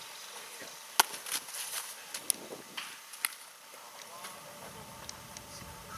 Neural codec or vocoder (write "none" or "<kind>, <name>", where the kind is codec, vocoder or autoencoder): none